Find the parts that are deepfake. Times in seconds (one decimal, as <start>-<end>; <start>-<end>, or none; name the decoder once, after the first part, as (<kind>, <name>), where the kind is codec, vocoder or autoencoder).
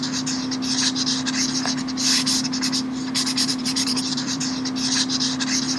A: 3.5-4.4 (vocoder, BigVGAN v2)